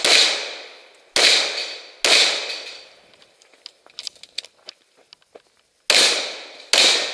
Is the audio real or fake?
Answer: real